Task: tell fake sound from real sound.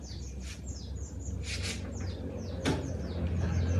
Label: real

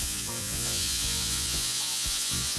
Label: fake